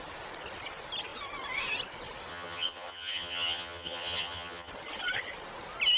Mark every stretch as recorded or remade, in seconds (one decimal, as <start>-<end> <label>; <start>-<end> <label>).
0.0-2.3 recorded; 2.3-4.7 remade; 4.7-6.0 recorded